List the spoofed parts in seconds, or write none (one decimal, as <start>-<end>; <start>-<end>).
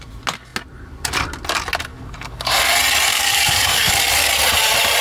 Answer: 1.9-2.5; 3.1-3.9